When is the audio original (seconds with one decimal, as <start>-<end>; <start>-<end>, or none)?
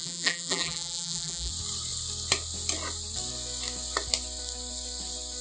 1.5-5.4